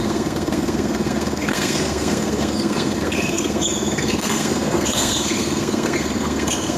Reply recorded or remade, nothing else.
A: remade